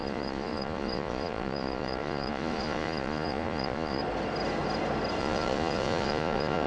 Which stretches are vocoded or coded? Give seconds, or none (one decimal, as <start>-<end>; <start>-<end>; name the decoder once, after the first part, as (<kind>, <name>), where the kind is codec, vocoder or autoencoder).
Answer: 0.0-4.0 (vocoder, Vocos); 5.2-6.7